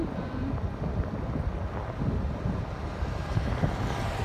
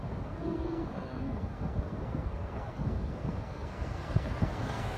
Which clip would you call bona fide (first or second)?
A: first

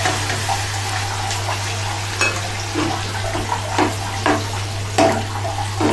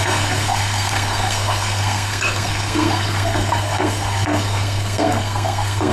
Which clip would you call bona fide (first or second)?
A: first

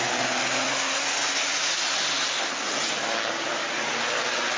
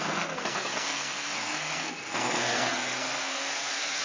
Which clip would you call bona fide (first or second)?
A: first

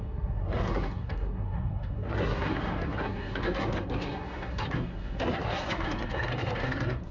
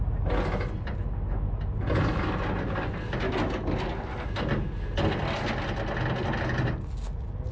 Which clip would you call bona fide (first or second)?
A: second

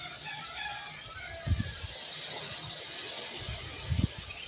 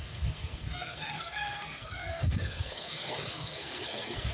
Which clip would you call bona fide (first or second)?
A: first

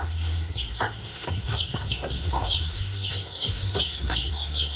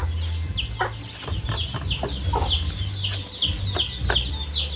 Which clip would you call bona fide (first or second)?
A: second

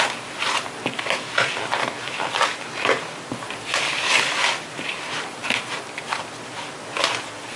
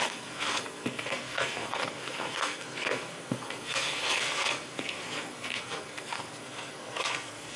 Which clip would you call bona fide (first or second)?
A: first